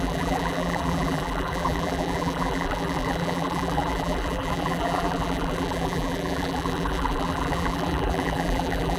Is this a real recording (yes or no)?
no